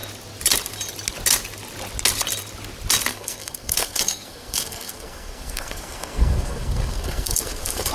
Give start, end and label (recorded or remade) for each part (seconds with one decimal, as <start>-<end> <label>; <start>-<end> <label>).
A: 0.0-3.1 recorded; 3.1-7.9 remade